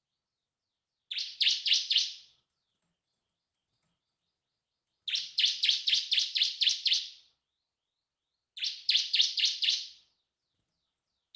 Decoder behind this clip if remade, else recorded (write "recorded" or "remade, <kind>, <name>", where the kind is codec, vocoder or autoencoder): recorded